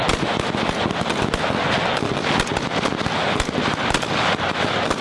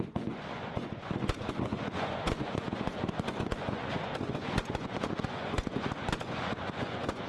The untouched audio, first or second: first